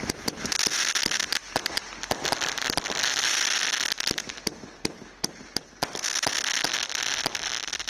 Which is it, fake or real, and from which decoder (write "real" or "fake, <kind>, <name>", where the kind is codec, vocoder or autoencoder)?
real